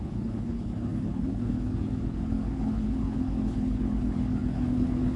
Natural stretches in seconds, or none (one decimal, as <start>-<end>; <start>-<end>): none